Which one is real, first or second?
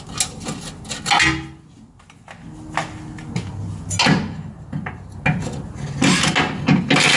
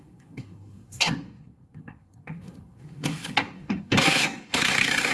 first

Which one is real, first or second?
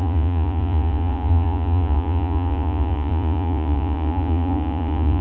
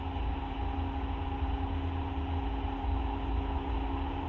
second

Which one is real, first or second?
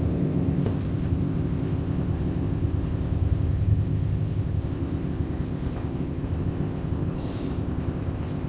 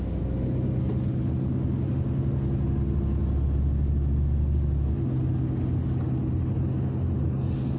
second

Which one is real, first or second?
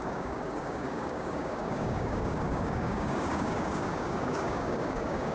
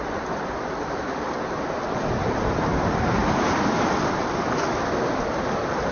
second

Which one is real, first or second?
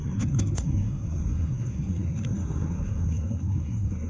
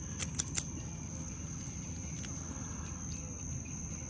second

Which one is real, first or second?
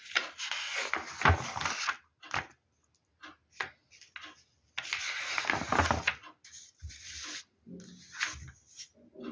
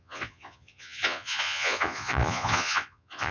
first